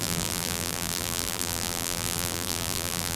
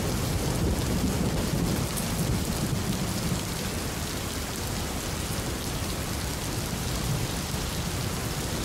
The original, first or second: second